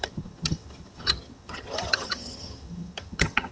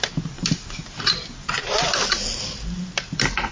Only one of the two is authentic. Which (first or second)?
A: second